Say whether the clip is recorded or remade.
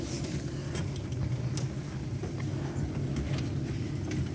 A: recorded